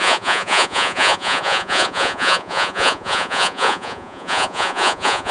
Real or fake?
fake